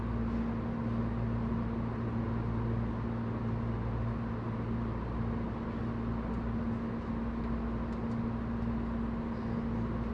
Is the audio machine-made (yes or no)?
no